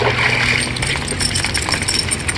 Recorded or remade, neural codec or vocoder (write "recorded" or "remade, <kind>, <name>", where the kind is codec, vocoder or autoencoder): recorded